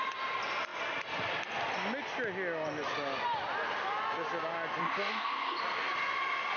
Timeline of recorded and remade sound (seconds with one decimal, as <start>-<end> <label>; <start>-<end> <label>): 0.0-4.8 recorded; 4.8-5.6 remade; 5.6-6.6 recorded